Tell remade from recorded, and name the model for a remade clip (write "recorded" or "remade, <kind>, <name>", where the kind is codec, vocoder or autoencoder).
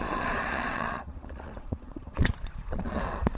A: remade, vocoder, Vocos